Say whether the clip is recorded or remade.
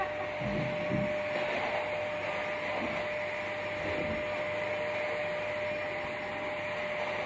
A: recorded